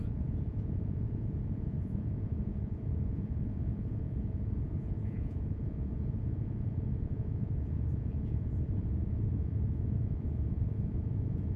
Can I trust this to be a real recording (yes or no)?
no